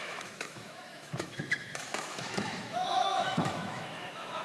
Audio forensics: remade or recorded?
remade